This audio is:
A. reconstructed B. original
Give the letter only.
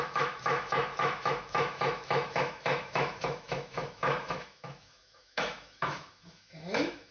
A